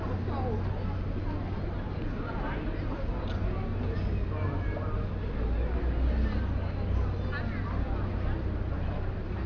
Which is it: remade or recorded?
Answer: recorded